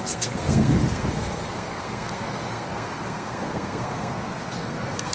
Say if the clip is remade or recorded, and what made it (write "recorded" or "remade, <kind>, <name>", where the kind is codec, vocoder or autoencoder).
remade, codec, SNAC